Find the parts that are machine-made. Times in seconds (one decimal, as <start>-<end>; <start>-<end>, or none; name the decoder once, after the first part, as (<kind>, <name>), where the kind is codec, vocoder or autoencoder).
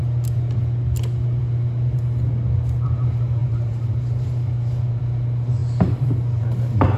3.4-5.0 (vocoder, BigVGAN v2)